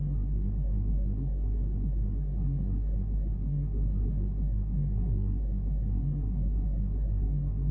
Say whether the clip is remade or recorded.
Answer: remade